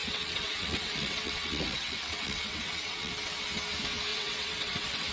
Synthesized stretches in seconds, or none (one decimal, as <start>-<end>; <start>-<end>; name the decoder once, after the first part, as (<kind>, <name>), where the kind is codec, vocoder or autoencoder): 0.0-3.1 (vocoder, WaveNeXt); 4.1-5.1